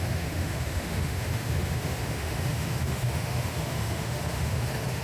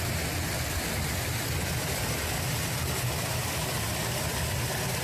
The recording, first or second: second